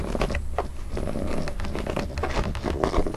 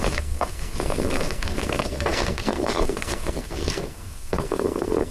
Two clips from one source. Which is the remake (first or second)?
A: second